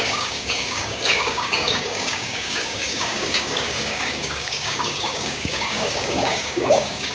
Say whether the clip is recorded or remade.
remade